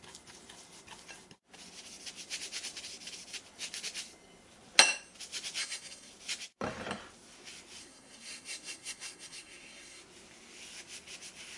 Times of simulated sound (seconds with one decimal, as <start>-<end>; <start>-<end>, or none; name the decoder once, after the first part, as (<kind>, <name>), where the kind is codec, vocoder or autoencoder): 5.6-6.1 (codec, SNAC); 7.8-10.0